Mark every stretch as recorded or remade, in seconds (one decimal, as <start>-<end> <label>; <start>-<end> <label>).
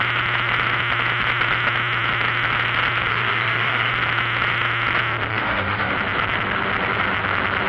0.0-3.1 recorded; 3.1-3.9 remade; 3.9-5.3 recorded; 5.3-5.9 remade; 5.9-7.7 recorded